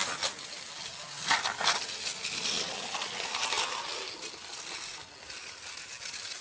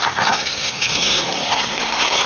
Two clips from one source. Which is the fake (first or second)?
second